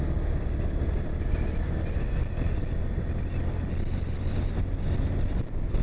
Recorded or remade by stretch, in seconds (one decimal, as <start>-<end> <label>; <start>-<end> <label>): 0.0-5.8 recorded